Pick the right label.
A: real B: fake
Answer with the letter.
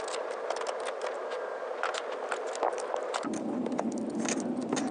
A